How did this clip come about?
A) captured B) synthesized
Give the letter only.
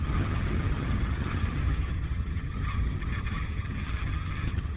B